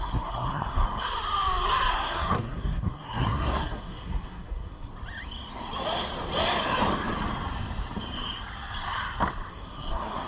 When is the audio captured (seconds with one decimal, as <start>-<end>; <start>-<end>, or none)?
0.8-1.9; 4.9-9.5